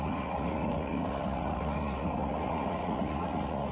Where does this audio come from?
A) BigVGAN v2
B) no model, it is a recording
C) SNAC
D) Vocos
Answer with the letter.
D